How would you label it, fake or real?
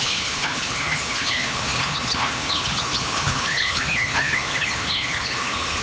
fake